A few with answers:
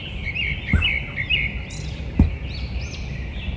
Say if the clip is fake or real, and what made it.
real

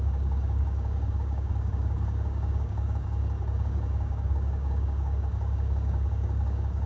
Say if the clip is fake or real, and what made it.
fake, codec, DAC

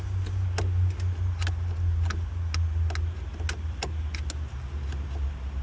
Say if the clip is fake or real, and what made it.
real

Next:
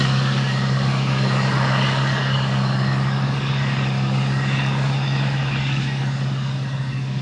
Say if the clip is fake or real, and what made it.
fake, codec, DAC